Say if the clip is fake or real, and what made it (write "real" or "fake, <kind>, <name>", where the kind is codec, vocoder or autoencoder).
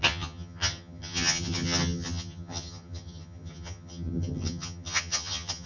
fake, vocoder, HiFi-GAN